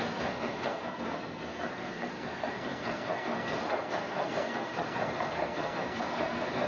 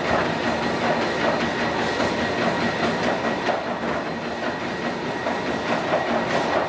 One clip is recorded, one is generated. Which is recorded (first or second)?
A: second